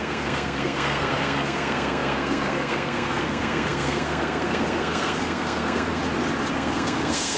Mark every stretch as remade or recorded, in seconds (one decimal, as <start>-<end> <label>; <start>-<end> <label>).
0.0-6.0 remade; 6.0-6.5 recorded; 6.5-7.4 remade